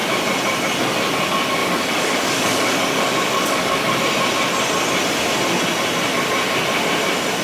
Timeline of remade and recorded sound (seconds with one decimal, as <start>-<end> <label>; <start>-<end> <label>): 0.0-1.6 recorded; 1.6-4.0 remade; 4.0-7.4 recorded